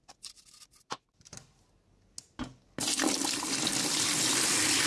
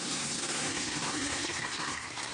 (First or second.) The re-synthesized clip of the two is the second